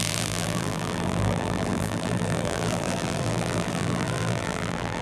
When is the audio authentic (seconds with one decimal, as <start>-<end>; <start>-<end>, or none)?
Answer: none